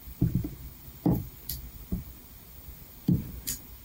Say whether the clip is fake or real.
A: fake